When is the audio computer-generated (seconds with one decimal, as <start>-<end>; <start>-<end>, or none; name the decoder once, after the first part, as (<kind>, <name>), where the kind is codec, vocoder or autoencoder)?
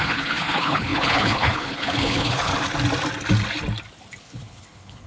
0.0-2.5 (codec, HILCodec); 4.2-5.1